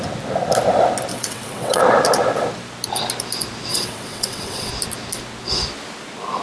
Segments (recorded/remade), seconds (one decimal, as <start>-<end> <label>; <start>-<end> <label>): 0.0-1.1 recorded; 1.1-1.8 remade; 1.8-3.7 recorded; 3.7-4.7 remade; 4.7-6.4 recorded